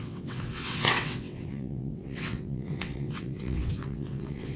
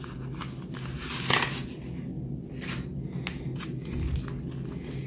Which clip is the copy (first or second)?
first